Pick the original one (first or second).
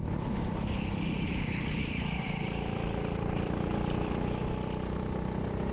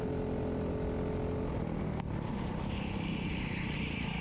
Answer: second